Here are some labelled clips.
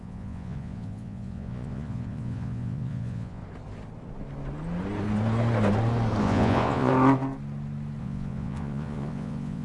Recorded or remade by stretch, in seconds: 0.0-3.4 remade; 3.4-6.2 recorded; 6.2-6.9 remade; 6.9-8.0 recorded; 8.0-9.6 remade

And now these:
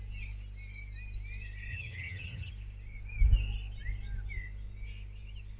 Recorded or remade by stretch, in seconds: 0.0-1.7 recorded; 1.7-2.5 remade; 2.5-5.6 recorded

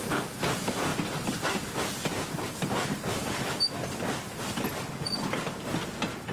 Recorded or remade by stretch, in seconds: 0.0-0.9 recorded; 0.9-4.7 remade; 4.7-6.3 recorded

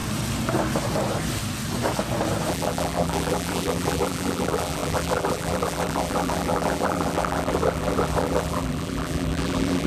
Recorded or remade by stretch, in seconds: 0.0-2.5 recorded; 2.5-9.9 remade